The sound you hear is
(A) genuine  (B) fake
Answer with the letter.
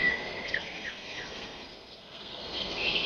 B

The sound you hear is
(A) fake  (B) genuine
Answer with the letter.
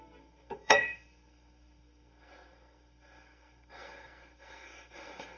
A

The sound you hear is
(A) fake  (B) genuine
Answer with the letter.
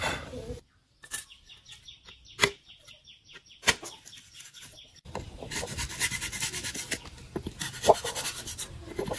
B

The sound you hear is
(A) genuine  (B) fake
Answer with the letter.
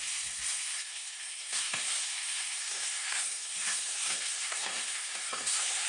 B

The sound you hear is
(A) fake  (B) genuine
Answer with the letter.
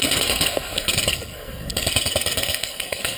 A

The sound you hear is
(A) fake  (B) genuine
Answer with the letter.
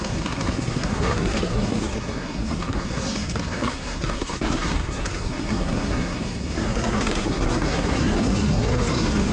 A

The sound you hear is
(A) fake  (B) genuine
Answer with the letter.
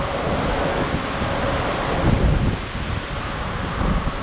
B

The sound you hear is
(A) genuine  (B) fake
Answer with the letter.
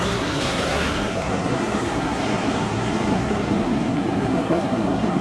B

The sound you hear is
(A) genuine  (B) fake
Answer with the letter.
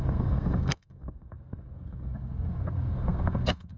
B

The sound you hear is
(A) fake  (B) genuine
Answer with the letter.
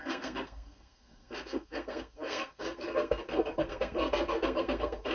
A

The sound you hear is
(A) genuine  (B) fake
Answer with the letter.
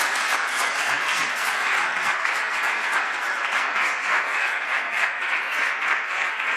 B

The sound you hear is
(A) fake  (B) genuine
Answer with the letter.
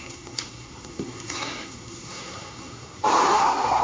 A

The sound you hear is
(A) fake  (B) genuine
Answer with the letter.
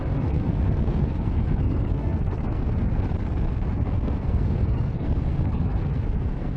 A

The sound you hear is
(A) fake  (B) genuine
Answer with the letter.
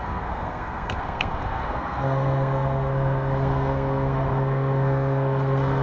A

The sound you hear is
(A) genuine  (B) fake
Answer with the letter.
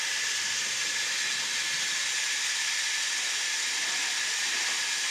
A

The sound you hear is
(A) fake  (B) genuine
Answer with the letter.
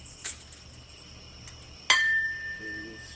B